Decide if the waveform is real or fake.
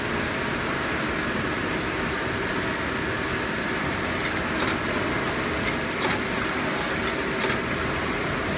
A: real